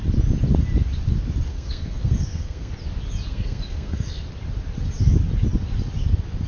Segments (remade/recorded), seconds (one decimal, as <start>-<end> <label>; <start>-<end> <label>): 0.0-1.5 recorded; 1.5-2.7 remade; 2.7-3.3 recorded; 3.3-4.2 remade; 4.2-6.5 recorded